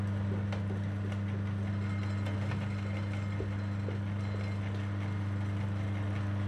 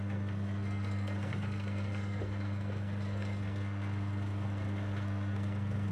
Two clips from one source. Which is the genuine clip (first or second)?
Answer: first